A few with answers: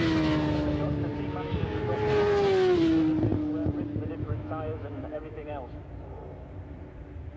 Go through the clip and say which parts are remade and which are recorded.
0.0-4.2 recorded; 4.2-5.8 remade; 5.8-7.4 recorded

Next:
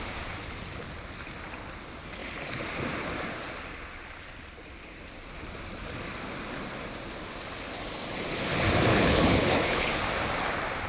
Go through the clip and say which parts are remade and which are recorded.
0.0-8.9 recorded; 8.9-9.9 remade; 9.9-10.9 recorded

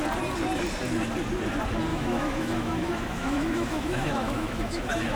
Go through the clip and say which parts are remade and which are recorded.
0.0-1.9 recorded; 1.9-5.2 remade